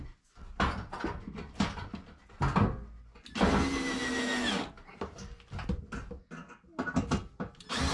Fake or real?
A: real